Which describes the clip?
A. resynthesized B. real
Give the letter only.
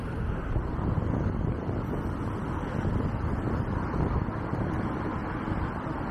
B